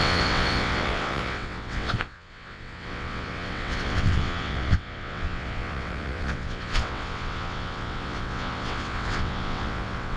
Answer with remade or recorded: remade